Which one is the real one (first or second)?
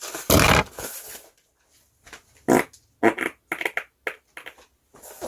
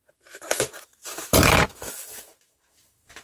first